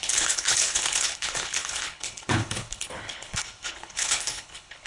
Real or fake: fake